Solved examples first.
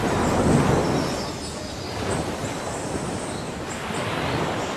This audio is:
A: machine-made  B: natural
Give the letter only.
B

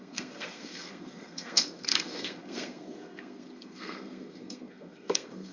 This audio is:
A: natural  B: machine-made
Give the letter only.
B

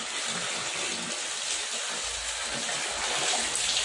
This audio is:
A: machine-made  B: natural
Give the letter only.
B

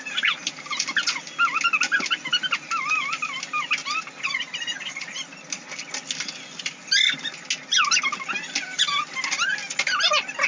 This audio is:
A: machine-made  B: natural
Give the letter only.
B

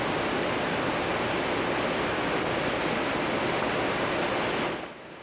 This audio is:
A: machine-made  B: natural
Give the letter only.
B